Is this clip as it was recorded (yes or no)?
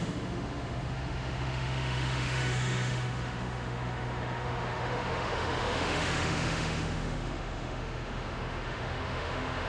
no